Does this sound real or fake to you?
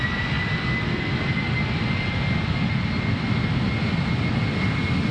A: real